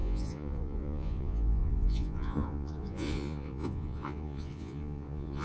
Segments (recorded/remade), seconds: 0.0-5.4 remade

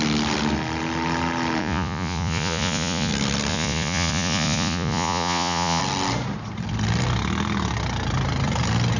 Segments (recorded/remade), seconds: 0.0-1.6 recorded; 1.6-3.1 remade; 3.1-3.5 recorded; 3.5-5.8 remade; 5.8-9.0 recorded

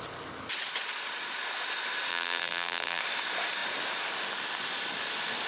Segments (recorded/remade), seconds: 0.0-2.1 recorded; 2.1-3.0 remade; 3.0-5.5 recorded

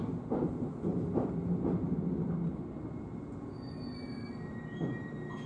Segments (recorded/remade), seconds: 0.0-5.5 recorded

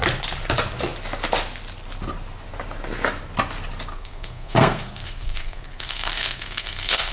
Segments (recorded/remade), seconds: 0.0-3.9 recorded; 3.9-7.1 remade

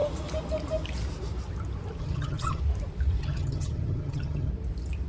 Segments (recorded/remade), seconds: 0.0-2.0 recorded; 2.0-2.6 remade; 2.6-3.2 recorded; 3.2-4.5 remade; 4.5-5.1 recorded

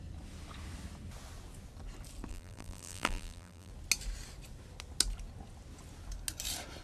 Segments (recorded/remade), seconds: 0.0-2.3 recorded; 2.3-3.7 remade; 3.7-6.8 recorded

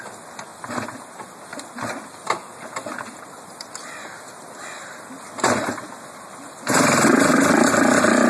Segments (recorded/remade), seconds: 0.0-1.5 recorded; 1.5-5.7 remade; 5.7-8.3 recorded